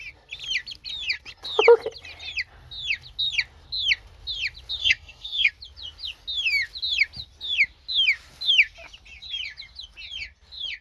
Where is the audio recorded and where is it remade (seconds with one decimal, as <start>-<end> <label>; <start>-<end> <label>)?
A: 0.0-4.8 recorded; 4.8-5.5 remade; 5.5-10.8 recorded